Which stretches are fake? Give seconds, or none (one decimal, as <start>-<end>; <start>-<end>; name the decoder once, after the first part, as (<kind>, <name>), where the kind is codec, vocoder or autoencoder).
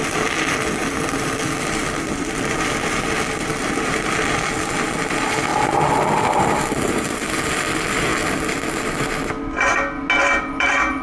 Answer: 0.0-5.5 (vocoder, BigVGAN v2); 6.1-8.1; 10.4-11.0